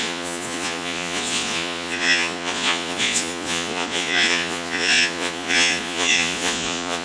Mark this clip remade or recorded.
remade